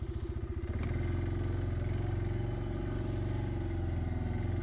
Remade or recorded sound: recorded